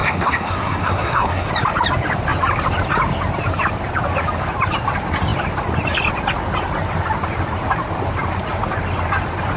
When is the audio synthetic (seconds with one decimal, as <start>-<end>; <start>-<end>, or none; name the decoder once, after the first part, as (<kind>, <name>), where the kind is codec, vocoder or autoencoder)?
0.0-1.5 (codec, SNAC)